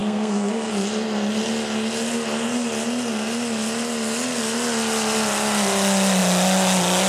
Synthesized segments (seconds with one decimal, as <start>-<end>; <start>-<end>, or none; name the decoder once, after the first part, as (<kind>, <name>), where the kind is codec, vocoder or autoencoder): 0.0-0.7 (codec, SNAC)